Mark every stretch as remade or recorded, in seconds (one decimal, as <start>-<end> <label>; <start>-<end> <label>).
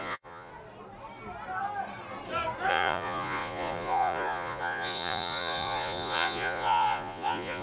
0.0-0.5 remade; 0.5-2.7 recorded; 2.7-7.6 remade